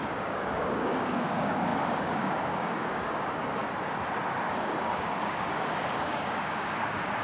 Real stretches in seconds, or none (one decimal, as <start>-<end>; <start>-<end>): 3.6-4.5